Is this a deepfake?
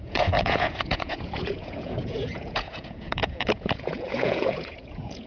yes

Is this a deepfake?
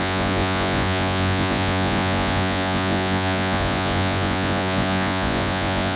yes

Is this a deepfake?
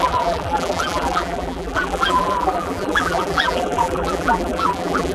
yes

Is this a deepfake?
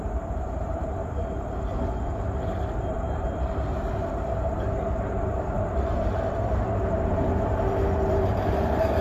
yes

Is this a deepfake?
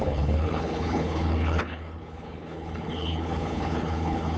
yes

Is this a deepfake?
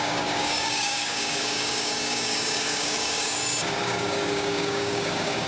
yes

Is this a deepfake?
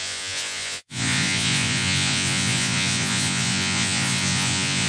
yes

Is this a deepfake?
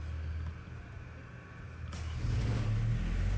no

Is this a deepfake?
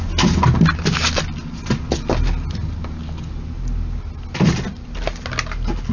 no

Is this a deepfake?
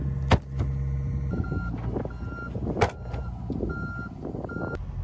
no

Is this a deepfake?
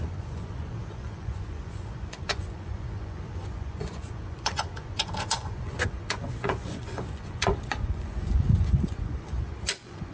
yes